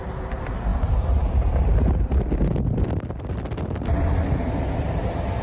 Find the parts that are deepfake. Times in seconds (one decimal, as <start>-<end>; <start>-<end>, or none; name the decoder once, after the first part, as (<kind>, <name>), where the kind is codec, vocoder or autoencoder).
none